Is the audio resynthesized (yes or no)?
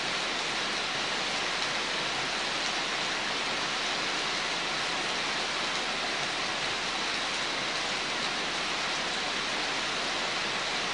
no